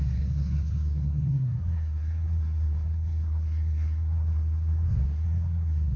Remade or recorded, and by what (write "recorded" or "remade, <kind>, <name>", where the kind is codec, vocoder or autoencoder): remade, codec, SNAC